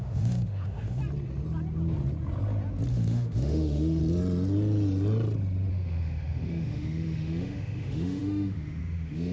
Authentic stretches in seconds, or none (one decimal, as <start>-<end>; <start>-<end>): 1.0-2.9; 4.0-5.7